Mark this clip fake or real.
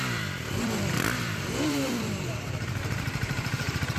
fake